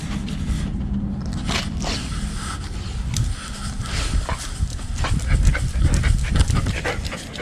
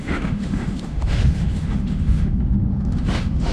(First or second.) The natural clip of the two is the first